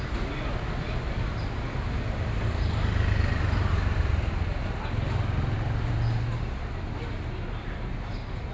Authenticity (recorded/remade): recorded